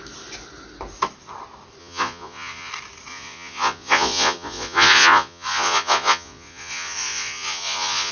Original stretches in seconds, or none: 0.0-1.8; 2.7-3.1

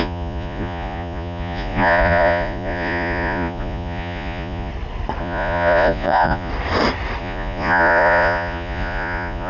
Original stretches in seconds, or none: 4.7-5.2; 6.5-7.2